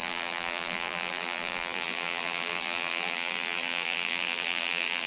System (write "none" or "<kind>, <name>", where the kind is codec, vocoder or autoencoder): vocoder, BigVGAN v2